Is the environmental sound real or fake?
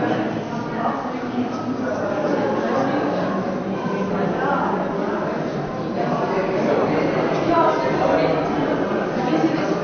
real